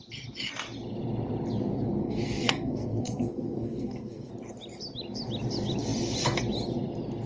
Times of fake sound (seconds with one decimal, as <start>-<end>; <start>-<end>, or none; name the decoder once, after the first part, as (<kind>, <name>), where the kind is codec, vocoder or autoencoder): 2.0-4.3 (codec, SNAC)